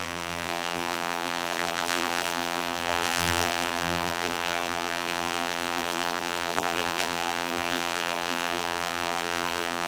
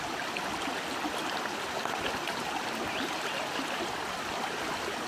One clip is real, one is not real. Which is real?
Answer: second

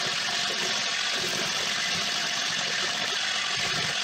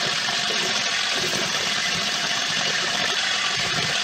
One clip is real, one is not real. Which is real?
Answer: first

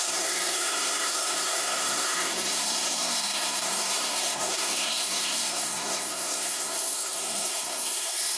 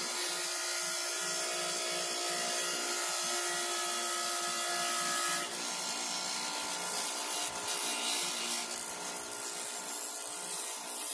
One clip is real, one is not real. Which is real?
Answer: second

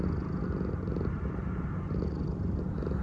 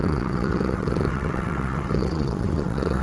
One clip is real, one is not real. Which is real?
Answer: first